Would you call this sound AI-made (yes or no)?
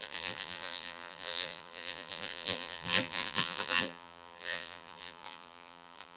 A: yes